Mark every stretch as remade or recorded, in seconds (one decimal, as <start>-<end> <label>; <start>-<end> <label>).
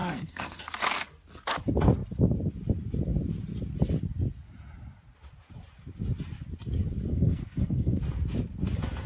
0.0-0.6 remade; 0.6-7.1 recorded; 7.1-8.0 remade; 8.0-9.1 recorded